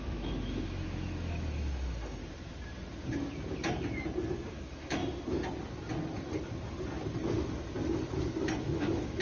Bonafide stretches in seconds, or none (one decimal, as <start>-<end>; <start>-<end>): 2.2-4.5; 5.0-8.6